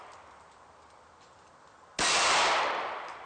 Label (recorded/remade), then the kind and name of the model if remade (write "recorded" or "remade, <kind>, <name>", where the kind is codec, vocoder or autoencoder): recorded